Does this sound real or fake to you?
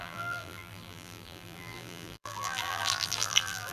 fake